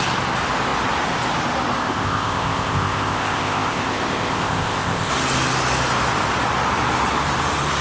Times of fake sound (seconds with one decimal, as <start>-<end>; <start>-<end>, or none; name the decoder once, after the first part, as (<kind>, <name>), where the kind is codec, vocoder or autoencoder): 1.8-5.1 (codec, ZipCodec)